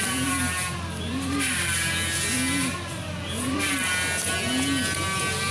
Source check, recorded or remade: recorded